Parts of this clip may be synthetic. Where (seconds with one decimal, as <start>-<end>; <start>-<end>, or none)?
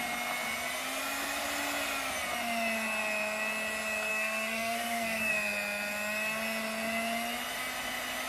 4.1-5.3